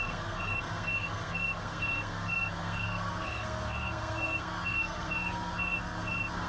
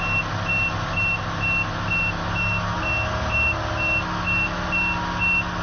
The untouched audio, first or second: second